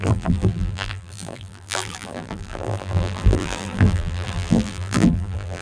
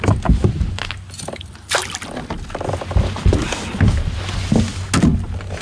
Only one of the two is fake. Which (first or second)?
first